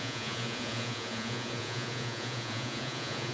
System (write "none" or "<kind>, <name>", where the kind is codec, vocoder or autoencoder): vocoder, Vocos